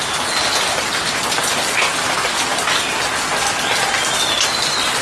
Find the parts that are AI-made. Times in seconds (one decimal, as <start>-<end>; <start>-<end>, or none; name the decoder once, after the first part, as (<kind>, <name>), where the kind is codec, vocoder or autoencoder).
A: none